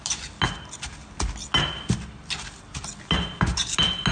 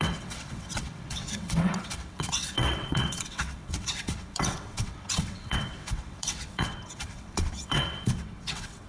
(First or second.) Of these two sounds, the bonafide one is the first